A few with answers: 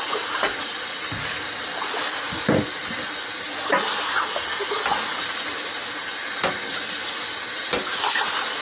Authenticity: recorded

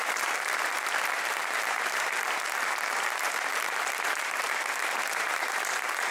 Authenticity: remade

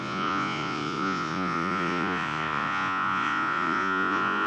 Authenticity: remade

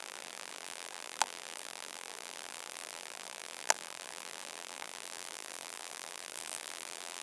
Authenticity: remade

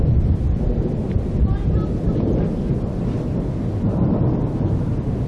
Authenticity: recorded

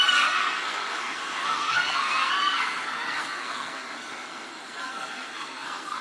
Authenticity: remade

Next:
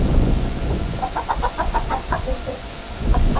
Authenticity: remade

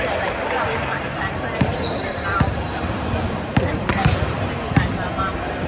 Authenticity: remade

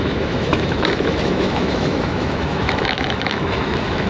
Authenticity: remade